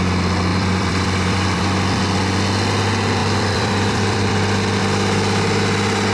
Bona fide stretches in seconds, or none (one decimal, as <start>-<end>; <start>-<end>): 0.0-0.5; 2.0-3.2; 4.8-6.1